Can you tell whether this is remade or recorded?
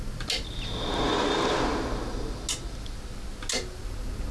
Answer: recorded